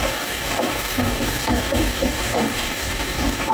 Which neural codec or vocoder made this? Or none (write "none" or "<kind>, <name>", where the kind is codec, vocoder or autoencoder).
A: codec, DAC